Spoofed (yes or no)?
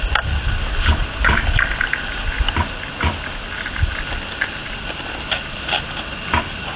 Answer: no